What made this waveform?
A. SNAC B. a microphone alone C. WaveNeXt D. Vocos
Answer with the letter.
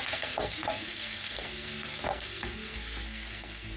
A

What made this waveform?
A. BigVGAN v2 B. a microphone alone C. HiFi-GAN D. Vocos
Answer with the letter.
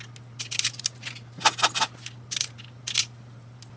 B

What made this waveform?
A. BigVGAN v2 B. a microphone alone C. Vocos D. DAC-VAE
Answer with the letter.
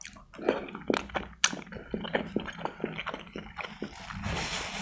B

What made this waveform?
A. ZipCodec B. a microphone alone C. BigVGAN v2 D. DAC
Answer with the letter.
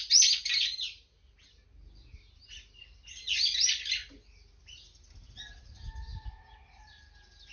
B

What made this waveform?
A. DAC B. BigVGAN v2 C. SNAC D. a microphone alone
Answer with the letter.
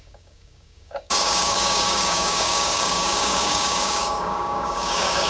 A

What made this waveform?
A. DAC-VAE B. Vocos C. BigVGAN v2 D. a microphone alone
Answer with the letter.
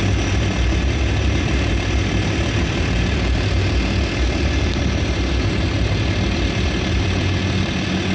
C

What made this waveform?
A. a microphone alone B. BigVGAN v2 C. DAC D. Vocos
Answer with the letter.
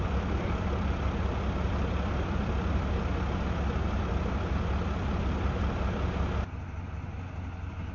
A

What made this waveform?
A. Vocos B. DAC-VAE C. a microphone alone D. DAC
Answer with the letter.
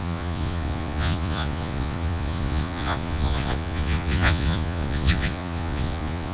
A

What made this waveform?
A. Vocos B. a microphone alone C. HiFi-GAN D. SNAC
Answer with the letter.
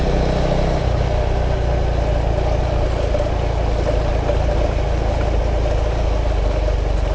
B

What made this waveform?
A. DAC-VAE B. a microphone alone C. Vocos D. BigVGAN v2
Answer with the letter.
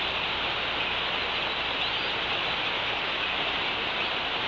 B